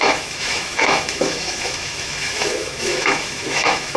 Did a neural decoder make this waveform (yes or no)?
yes